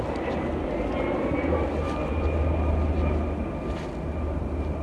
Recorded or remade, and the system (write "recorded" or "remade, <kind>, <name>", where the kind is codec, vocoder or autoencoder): recorded